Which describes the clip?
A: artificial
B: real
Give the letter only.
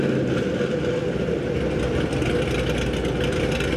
B